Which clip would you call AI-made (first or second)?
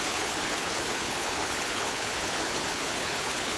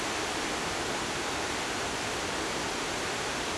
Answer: first